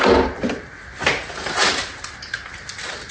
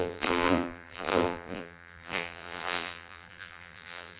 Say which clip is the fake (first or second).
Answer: second